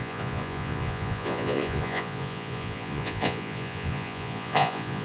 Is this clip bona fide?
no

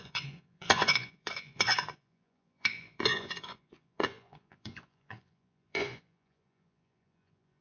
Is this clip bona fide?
no